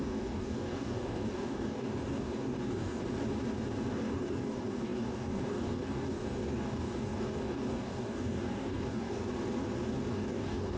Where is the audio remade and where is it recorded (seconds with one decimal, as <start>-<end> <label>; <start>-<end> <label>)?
0.0-3.0 remade; 3.0-3.9 recorded; 3.9-9.2 remade; 9.2-10.1 recorded; 10.1-10.8 remade